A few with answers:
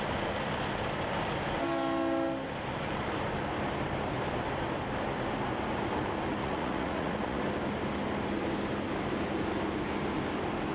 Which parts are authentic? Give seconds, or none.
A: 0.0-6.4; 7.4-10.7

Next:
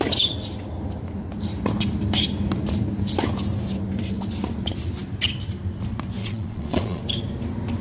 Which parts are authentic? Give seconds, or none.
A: 0.0-6.2; 7.0-7.8

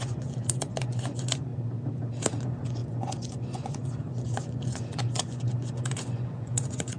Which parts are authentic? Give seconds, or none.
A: 1.5-2.4